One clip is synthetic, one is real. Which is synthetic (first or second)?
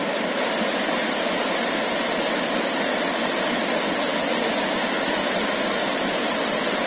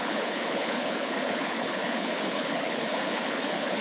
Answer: second